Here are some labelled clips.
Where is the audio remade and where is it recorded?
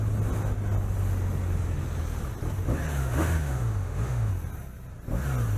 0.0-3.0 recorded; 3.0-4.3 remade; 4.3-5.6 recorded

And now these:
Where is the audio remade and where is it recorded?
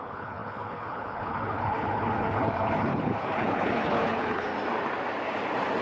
0.0-4.5 remade; 4.5-5.8 recorded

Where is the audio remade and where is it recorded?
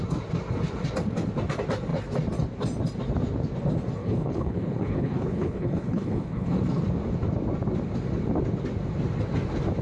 0.0-4.0 recorded; 4.0-6.6 remade; 6.6-9.8 recorded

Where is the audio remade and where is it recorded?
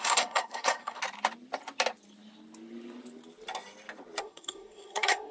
0.0-1.0 remade; 1.0-4.2 recorded; 4.2-5.3 remade